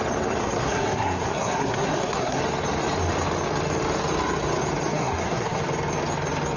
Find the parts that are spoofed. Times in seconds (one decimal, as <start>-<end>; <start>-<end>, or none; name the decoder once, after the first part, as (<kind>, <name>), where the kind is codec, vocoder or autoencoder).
0.4-2.4 (codec, SNAC); 4.9-5.6